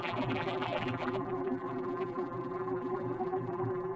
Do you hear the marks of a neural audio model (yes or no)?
yes